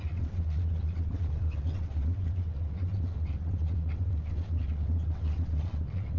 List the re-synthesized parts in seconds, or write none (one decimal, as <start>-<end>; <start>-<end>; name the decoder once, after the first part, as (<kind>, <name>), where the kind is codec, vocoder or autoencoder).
0.0-6.2 (vocoder, WaveNeXt)